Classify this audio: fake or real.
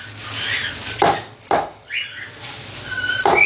real